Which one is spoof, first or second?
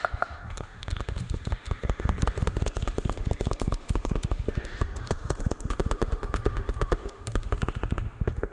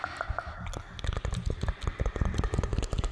first